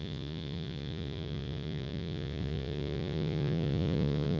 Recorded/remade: remade